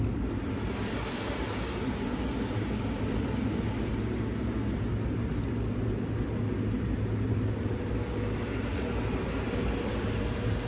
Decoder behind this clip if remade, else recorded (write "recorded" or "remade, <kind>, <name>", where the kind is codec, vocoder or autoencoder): recorded